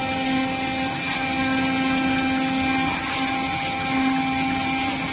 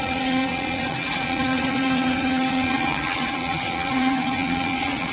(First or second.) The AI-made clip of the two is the second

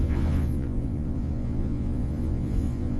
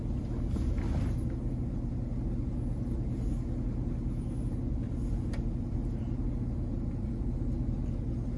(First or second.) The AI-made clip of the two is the first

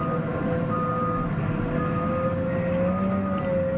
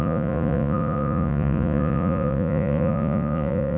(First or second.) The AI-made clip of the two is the second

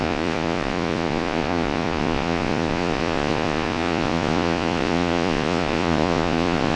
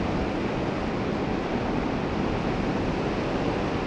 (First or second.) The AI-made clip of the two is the first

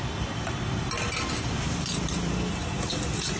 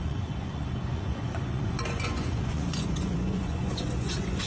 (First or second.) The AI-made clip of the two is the second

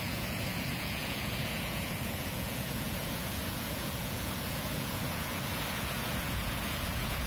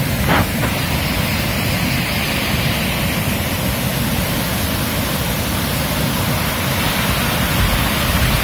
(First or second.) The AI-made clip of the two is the first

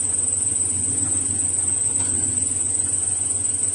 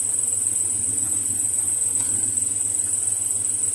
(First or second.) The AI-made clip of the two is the first